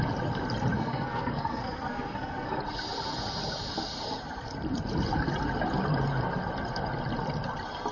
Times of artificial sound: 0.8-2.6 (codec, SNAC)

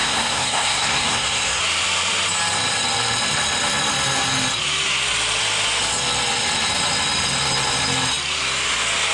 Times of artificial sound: 0.0-1.6 (codec, SNAC)